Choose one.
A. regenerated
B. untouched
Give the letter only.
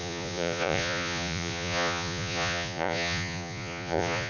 A